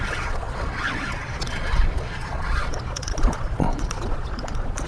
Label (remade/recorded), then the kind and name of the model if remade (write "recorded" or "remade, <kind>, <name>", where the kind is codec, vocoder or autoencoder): remade, vocoder, Vocos